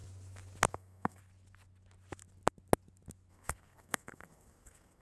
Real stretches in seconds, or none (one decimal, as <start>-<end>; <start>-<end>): 0.0-0.7; 1.2-3.3